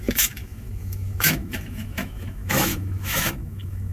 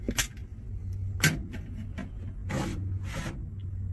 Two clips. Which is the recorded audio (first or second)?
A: second